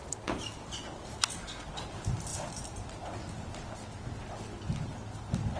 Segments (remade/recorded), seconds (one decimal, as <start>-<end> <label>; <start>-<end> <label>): 0.0-5.6 recorded